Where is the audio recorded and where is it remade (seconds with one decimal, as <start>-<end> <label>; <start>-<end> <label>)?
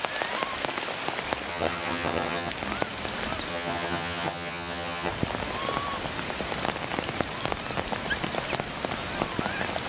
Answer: 0.0-1.5 recorded; 1.5-2.5 remade; 2.5-3.5 recorded; 3.5-5.1 remade; 5.1-9.9 recorded